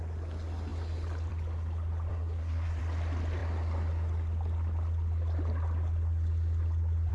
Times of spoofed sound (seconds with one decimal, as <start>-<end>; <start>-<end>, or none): 2.1-2.8

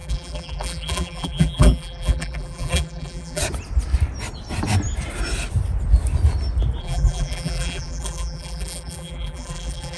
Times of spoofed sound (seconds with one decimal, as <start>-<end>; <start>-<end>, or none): 0.0-3.4; 6.8-10.0